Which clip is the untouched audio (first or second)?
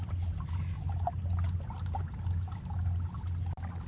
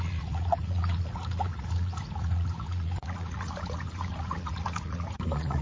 first